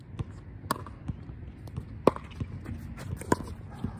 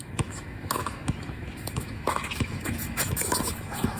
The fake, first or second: second